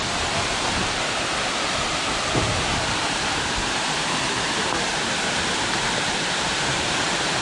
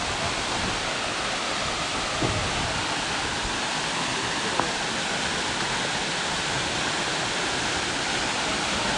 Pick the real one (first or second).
second